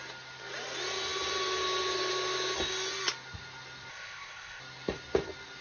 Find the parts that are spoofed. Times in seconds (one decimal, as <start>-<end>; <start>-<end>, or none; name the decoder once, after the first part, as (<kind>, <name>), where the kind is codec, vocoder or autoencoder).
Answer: 3.9-4.6 (codec, ZipCodec)